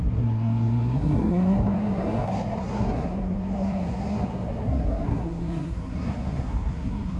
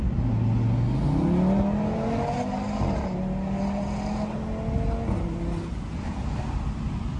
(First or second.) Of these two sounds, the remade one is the first